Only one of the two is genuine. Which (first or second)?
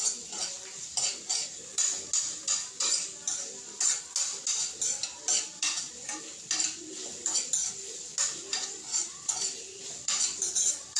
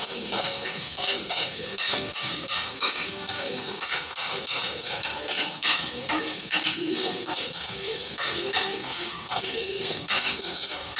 first